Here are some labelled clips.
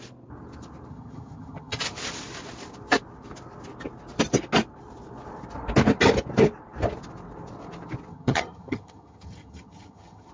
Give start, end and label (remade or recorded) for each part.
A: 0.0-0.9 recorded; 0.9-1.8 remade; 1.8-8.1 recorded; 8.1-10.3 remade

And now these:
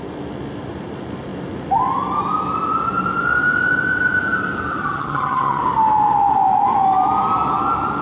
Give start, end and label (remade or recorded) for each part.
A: 0.0-4.8 recorded; 4.8-5.6 remade; 5.6-8.0 recorded

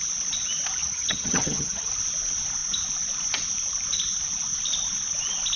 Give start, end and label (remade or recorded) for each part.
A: 0.0-0.8 recorded; 0.8-1.9 remade; 1.9-5.6 recorded

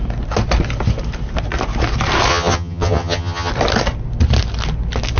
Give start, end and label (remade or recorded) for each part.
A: 0.0-2.3 recorded; 2.3-3.5 remade; 3.5-5.2 recorded

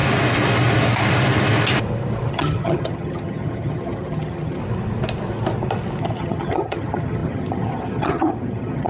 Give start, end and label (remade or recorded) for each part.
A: 0.0-2.3 recorded; 2.3-4.6 remade; 4.6-6.0 recorded; 6.0-8.9 remade

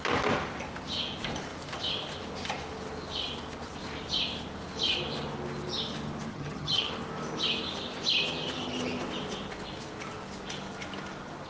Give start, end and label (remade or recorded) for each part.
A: 0.0-6.3 recorded; 6.3-6.9 remade; 6.9-11.5 recorded